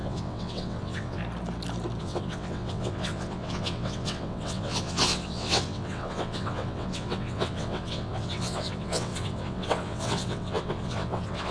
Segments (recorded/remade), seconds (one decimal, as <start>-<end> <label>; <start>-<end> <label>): 0.0-1.2 remade; 1.2-2.0 recorded; 2.0-11.5 remade